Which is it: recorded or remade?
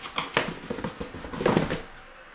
recorded